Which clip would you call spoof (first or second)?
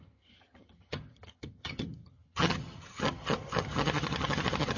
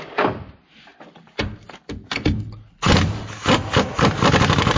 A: first